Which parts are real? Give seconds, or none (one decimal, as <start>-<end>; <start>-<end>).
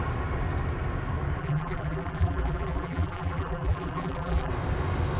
0.0-1.4; 4.5-5.2